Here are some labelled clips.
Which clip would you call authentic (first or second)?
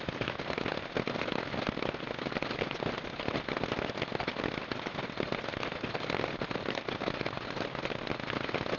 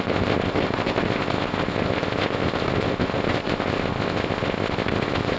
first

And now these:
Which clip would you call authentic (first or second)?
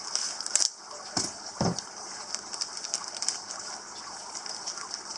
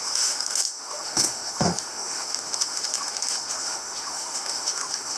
first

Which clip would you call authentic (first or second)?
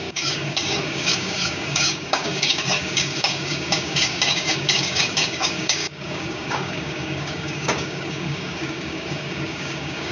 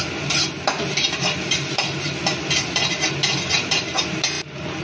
second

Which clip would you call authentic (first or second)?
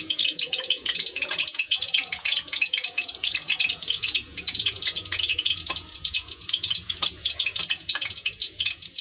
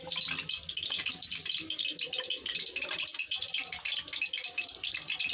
second